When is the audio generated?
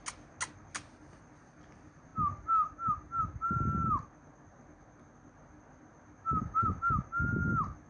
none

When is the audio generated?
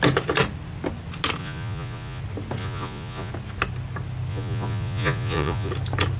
1.4-2.2 (vocoder, Vocos); 2.6-3.3; 4.3-5.7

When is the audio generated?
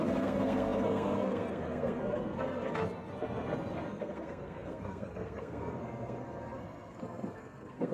0.0-7.9 (codec, SNAC)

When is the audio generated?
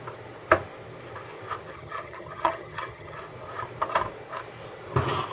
1.7-3.2 (vocoder, HiFi-GAN)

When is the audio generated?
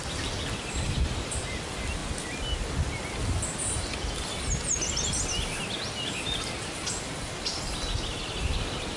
none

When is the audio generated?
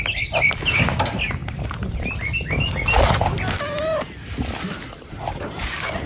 none